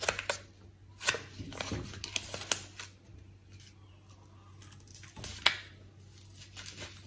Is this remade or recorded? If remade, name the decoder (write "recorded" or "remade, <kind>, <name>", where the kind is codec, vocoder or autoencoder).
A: recorded